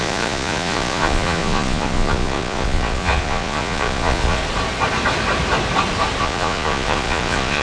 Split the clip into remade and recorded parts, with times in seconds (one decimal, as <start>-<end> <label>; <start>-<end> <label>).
0.0-4.4 remade; 4.4-6.2 recorded; 6.2-7.6 remade